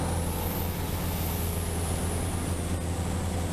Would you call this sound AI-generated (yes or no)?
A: no